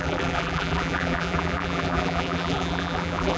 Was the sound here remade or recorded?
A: remade